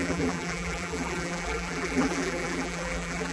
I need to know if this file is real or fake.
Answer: fake